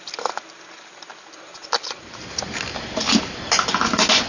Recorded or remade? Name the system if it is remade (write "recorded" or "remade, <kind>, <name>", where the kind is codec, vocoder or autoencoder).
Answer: recorded